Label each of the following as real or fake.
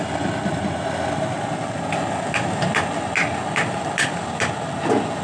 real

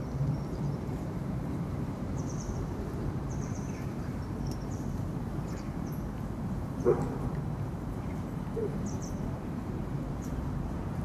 fake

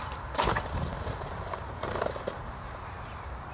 fake